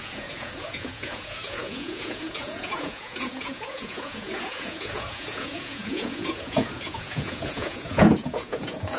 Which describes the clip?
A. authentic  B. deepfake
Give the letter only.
B